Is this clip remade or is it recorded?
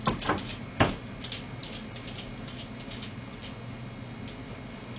recorded